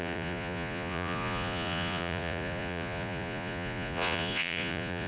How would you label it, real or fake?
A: fake